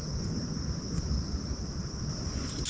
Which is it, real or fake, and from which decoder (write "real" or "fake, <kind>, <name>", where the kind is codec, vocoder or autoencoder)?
real